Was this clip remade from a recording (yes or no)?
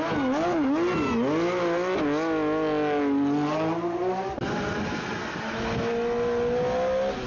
no